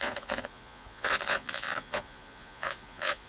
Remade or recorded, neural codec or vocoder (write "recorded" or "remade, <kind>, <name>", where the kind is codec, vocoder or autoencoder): remade, vocoder, Vocos